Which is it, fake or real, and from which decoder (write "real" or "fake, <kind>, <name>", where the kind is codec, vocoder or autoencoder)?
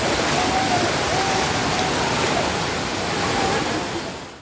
real